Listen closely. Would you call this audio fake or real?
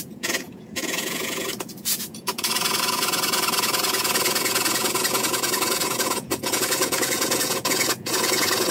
fake